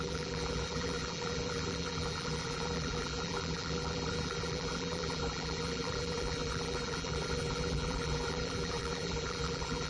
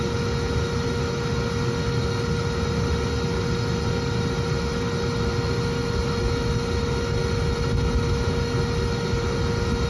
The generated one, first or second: first